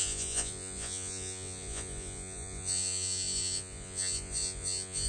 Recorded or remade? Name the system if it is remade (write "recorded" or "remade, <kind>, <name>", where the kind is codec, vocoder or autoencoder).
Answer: remade, vocoder, Vocos